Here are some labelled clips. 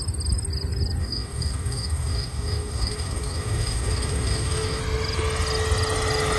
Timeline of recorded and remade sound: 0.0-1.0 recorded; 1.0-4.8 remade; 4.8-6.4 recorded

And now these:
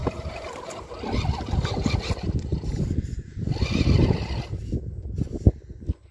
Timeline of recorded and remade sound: 0.0-0.9 remade; 0.9-6.1 recorded

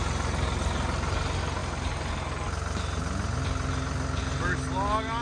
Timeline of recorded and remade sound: 0.0-5.2 recorded